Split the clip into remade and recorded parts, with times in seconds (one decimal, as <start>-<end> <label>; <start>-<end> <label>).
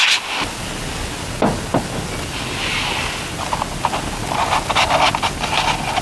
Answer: 0.0-6.0 recorded